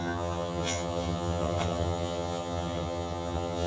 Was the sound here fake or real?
fake